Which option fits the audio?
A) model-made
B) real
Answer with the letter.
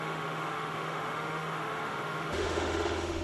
A